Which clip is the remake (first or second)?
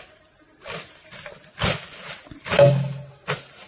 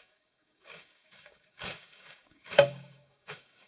second